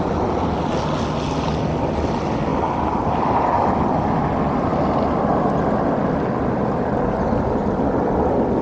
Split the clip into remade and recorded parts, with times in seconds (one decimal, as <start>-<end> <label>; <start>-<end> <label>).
0.0-8.6 recorded